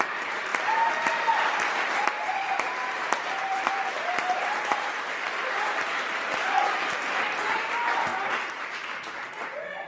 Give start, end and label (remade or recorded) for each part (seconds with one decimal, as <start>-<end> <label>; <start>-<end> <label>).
0.0-0.5 remade; 0.5-1.9 recorded; 1.9-9.9 remade